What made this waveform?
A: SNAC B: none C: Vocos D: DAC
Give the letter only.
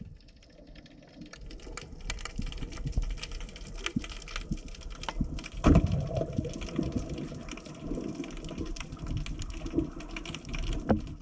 B